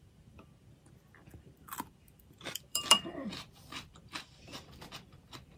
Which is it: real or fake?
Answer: fake